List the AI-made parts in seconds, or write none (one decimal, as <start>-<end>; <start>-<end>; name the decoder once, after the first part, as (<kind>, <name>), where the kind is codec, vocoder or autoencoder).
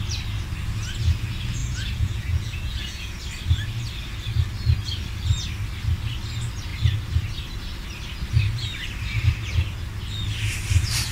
1.6-3.2 (vocoder, Vocos)